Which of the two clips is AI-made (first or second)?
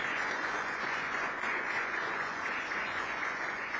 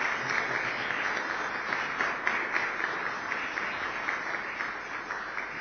first